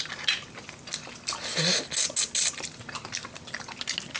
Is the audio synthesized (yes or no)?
no